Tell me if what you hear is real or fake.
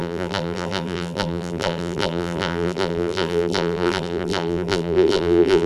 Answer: fake